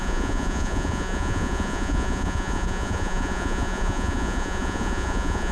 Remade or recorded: remade